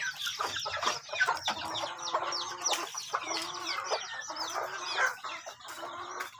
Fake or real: real